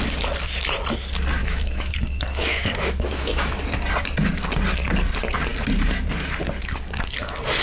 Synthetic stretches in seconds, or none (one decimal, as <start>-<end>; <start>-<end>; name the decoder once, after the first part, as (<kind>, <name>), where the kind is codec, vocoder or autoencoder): 1.4-3.6 (autoencoder, DAC-VAE)